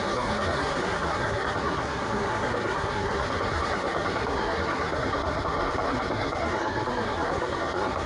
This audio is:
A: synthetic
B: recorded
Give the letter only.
A